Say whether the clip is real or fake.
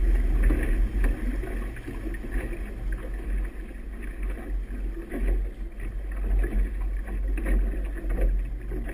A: real